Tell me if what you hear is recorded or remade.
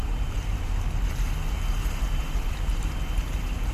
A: remade